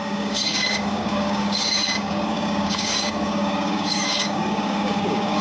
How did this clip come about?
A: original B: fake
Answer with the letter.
B